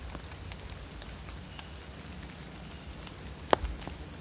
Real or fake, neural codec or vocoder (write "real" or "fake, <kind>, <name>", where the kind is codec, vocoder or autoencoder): real